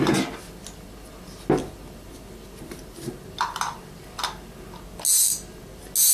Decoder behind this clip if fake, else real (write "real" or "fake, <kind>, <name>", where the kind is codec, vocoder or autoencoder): real